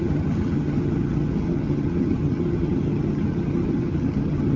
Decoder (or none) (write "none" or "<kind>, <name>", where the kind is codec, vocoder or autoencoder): vocoder, HiFi-GAN